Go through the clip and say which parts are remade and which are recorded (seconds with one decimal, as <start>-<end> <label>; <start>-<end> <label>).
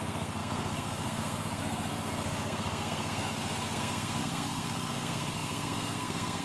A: 0.0-6.4 remade